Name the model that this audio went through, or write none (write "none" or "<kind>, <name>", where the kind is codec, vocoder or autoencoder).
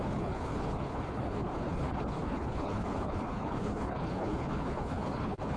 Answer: codec, HILCodec